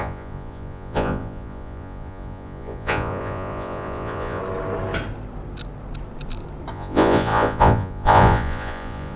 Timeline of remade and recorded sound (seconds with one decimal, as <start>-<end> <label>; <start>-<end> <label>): 0.0-4.4 remade; 4.4-6.7 recorded; 6.7-9.2 remade